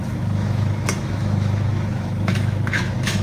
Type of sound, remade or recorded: remade